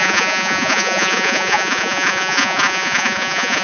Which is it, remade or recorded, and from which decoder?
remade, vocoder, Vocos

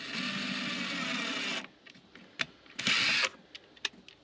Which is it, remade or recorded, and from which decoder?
recorded